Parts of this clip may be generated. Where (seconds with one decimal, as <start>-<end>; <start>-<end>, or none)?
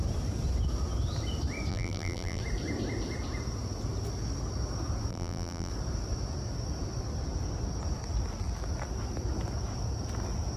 1.7-2.4; 5.1-5.7